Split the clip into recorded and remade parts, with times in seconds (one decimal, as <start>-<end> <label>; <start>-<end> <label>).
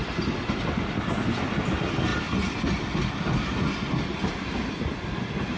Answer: 0.0-5.6 recorded